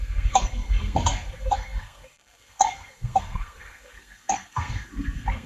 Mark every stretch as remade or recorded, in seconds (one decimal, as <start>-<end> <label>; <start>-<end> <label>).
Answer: 0.0-5.5 remade